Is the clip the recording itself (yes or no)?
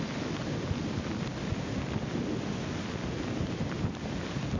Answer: yes